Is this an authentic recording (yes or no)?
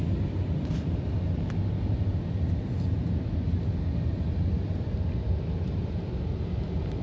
yes